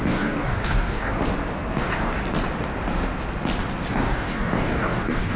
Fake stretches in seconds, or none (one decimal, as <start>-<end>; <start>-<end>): 0.0-1.1; 1.8-2.2; 3.9-5.4

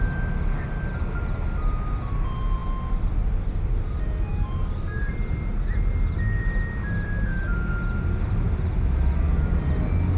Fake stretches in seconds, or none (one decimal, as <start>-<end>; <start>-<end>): 4.3-5.1

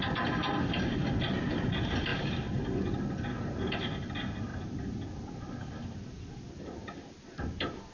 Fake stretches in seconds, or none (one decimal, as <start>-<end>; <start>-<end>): none

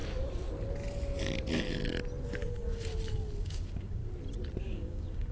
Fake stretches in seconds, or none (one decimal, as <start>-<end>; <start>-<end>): 2.5-2.9; 3.4-4.0; 4.6-5.3

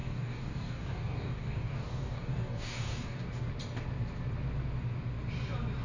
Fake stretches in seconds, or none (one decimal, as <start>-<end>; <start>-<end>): 0.0-3.5